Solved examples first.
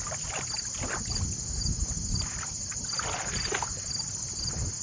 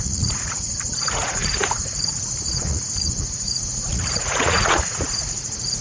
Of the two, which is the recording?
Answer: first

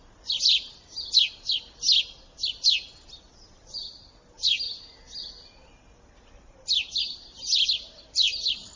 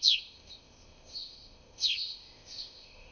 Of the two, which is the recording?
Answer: first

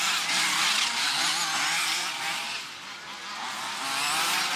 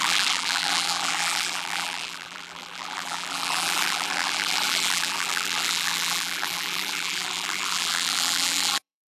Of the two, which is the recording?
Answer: first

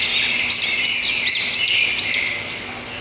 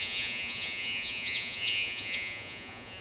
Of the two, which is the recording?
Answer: first